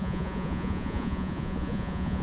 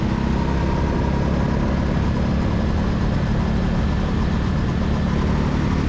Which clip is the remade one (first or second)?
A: first